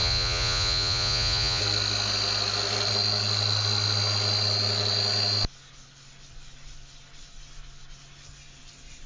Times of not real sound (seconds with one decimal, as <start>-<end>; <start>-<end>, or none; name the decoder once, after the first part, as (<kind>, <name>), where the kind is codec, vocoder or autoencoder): 0.0-1.6 (vocoder, Vocos)